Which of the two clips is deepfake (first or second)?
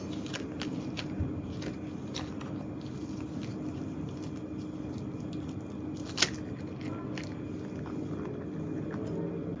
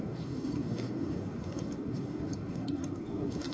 second